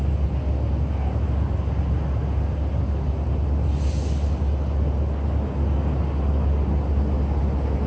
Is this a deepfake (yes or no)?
no